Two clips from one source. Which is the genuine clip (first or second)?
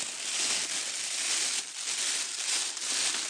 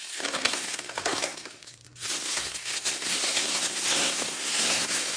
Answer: first